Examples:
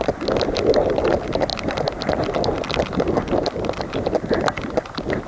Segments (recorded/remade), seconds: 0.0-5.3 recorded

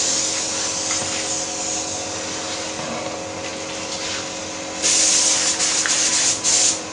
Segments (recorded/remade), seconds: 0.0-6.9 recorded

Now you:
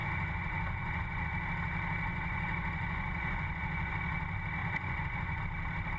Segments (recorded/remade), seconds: 0.0-1.2 remade; 1.2-2.1 recorded; 2.1-3.9 remade; 3.9-4.6 recorded; 4.6-5.4 remade; 5.4-6.0 recorded

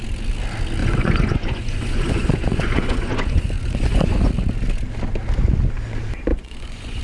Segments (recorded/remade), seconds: 0.0-0.8 recorded; 0.8-4.3 remade; 4.3-6.3 recorded; 6.3-7.0 remade